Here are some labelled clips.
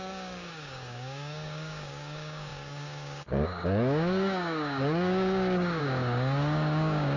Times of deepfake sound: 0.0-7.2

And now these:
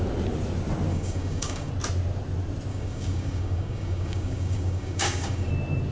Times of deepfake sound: 0.9-1.7; 2.7-5.5

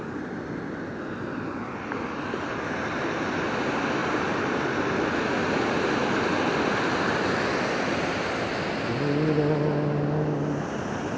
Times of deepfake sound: none

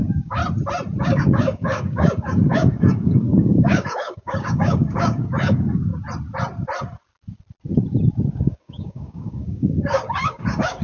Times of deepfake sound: 0.0-0.4; 1.0-5.9; 8.3-10.8

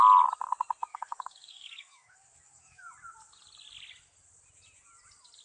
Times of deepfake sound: 0.9-2.9

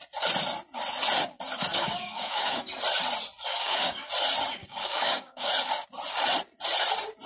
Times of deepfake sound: 1.7-2.6; 3.5-4.1; 4.6-5.5

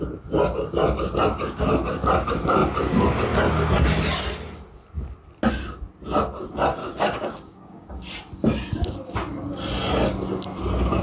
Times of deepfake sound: 6.8-8.1